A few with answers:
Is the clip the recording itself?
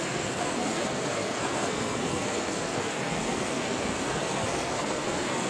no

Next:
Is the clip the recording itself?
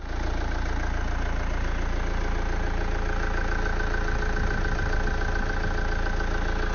yes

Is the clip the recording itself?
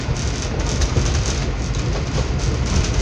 yes